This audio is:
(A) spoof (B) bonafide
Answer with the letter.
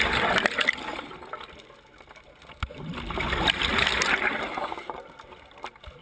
B